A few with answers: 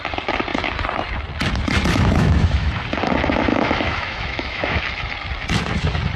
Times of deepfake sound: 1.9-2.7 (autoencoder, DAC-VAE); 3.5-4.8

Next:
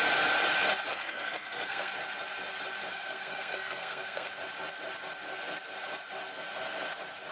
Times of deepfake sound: 0.9-1.9 (codec, SNAC); 2.9-4.3

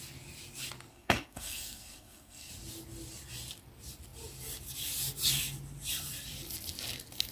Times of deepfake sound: 0.9-2.5 (codec, SNAC)

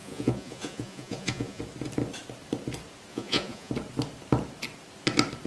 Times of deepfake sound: 0.0-1.6 (vocoder, Vocos); 3.1-3.7

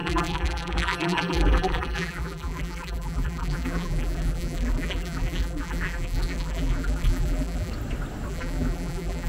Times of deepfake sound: 0.0-7.7 (vocoder, BigVGAN v2); 8.3-9.3